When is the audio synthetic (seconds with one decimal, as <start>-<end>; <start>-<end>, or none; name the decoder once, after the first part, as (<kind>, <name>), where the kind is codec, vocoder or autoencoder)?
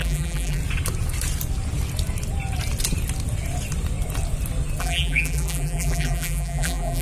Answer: 0.0-0.6 (vocoder, BigVGAN v2); 4.8-7.0